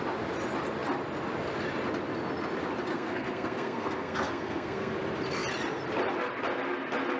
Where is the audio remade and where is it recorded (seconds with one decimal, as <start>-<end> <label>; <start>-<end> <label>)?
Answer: 0.0-2.9 recorded; 2.9-4.9 remade; 4.9-7.2 recorded